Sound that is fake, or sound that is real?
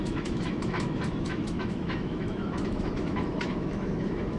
fake